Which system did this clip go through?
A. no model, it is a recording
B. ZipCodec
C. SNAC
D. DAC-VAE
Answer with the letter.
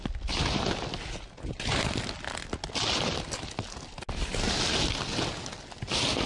A